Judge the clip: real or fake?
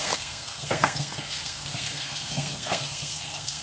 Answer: fake